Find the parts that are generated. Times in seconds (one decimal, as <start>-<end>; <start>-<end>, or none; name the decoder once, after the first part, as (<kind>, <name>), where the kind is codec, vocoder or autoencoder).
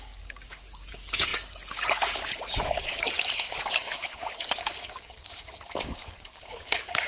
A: 0.0-7.1 (codec, DAC)